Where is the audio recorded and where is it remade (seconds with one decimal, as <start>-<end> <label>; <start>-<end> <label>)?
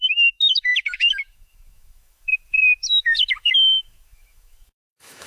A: 0.0-5.3 remade